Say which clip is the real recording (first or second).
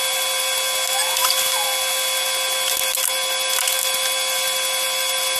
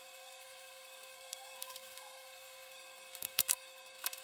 first